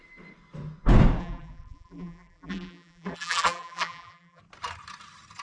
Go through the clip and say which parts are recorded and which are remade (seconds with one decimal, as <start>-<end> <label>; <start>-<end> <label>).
0.0-1.2 recorded; 1.2-4.4 remade; 4.4-5.4 recorded